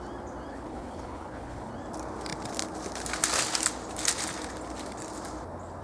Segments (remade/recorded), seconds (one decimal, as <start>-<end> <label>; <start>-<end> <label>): 0.0-0.5 recorded; 0.5-1.7 remade; 1.7-5.8 recorded